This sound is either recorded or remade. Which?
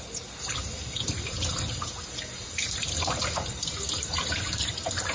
remade